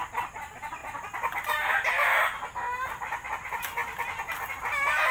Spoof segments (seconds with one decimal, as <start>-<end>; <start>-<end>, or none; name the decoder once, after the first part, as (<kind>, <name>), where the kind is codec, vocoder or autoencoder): none